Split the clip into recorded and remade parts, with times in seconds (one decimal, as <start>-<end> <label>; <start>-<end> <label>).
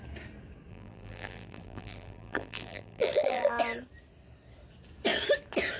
0.0-0.7 recorded; 0.7-3.5 remade; 3.5-5.8 recorded